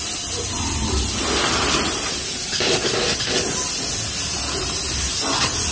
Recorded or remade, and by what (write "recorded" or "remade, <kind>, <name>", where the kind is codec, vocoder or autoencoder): recorded